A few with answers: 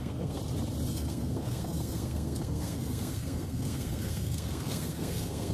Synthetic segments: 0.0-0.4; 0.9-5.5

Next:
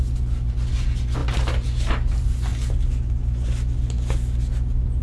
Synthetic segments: none

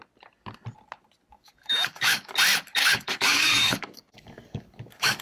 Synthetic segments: 1.3-2.3; 2.8-5.2

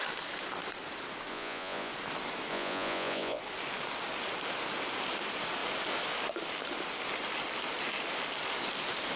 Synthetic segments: 1.3-1.9; 2.5-3.4